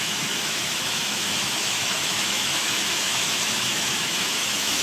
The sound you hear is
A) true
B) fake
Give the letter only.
B